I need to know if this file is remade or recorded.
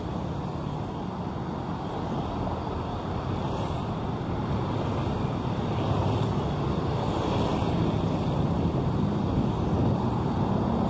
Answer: recorded